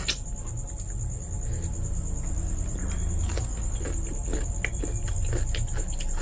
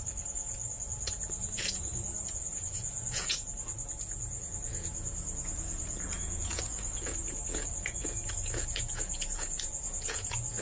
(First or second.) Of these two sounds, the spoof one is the second